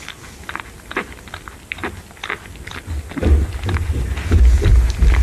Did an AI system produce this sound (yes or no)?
no